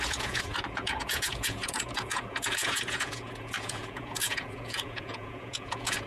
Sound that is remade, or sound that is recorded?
remade